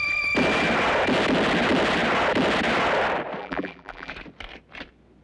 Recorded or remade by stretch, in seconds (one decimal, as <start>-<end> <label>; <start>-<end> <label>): 0.0-3.4 recorded; 3.4-4.1 remade; 4.1-5.2 recorded